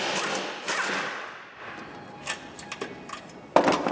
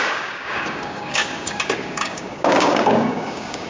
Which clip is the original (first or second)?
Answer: first